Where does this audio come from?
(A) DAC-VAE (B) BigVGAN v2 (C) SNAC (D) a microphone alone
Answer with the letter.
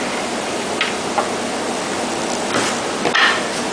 D